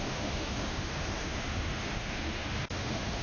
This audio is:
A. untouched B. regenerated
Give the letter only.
B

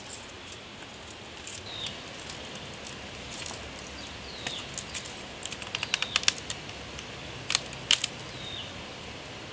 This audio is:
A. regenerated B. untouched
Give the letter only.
B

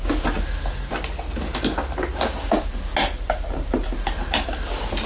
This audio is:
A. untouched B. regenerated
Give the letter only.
A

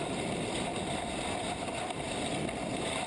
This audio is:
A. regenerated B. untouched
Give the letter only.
B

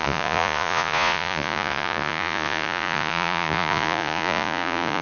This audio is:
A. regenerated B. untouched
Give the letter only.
A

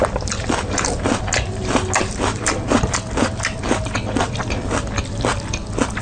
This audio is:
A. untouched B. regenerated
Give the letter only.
A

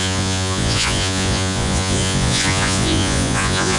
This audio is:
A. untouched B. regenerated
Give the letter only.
B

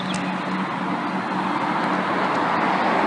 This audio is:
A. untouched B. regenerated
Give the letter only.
A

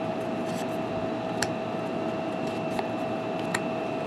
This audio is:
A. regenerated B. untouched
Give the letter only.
B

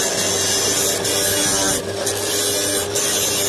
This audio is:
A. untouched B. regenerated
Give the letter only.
A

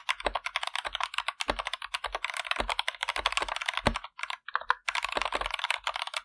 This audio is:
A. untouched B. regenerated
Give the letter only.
A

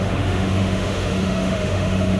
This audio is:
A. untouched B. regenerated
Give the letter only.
B